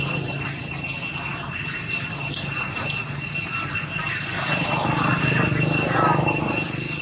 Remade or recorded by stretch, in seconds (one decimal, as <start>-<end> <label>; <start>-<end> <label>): 0.0-7.0 recorded